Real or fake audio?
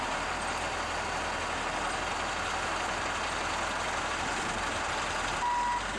real